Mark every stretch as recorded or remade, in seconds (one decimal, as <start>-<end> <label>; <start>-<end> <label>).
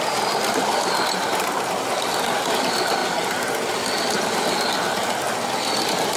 0.0-6.2 recorded